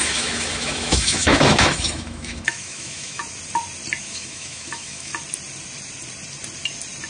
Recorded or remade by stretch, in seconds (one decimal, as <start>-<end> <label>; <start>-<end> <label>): 0.0-3.2 remade; 3.2-4.0 recorded; 4.0-5.1 remade; 5.1-7.1 recorded